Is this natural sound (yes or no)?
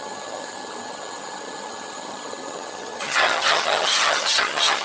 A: no